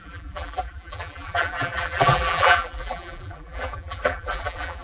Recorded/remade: remade